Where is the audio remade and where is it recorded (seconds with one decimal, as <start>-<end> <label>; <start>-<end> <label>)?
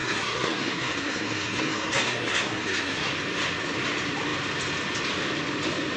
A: 0.0-3.1 remade; 3.1-6.0 recorded